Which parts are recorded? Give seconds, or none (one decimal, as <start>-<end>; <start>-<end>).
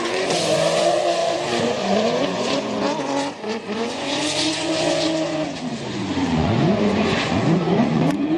none